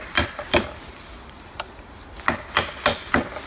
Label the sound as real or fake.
real